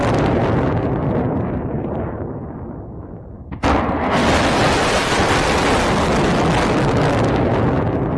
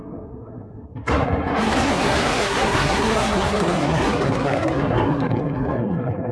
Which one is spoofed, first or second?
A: second